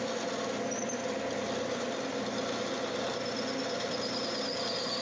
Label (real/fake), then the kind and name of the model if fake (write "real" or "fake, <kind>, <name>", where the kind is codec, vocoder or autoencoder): real